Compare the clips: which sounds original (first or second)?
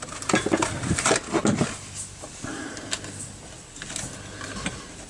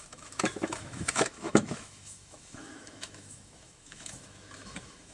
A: first